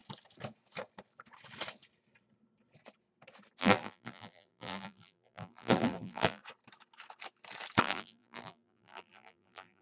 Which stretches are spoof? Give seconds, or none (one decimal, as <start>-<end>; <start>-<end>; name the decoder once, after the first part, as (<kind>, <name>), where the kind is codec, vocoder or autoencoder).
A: 3.6-6.4 (vocoder, BigVGAN v2); 7.8-9.8